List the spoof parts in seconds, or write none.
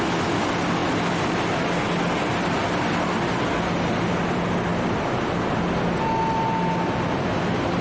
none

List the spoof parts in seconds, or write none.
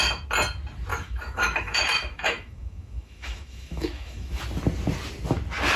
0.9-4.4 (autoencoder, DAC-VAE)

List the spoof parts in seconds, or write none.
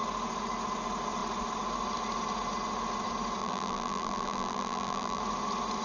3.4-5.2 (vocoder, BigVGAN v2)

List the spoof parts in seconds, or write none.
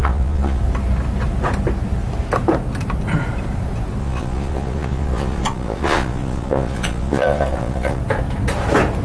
0.0-0.6 (vocoder, Vocos); 4.0-8.0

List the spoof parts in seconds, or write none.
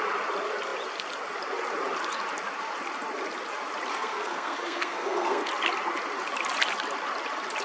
3.9-5.5 (codec, SNAC)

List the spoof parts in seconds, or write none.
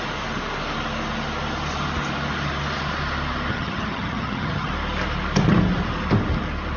3.5-4.7 (vocoder, HiFi-GAN)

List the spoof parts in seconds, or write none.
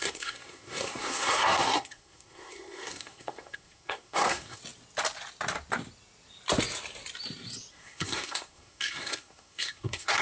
0.0-4.6 (codec, SNAC); 7.7-10.2